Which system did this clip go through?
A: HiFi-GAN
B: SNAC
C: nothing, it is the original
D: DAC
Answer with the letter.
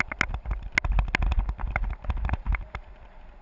C